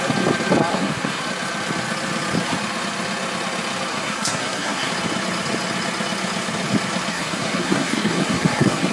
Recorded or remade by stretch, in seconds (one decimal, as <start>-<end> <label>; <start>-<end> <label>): 0.0-0.7 recorded; 0.7-1.2 remade; 1.2-3.9 recorded; 3.9-4.9 remade; 4.9-7.1 recorded; 7.1-8.9 remade